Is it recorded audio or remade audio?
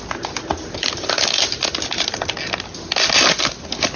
recorded